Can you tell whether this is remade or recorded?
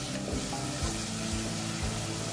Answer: recorded